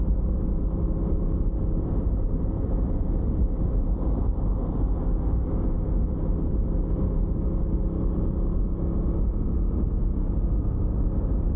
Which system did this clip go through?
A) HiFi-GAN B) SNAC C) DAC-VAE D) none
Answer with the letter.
D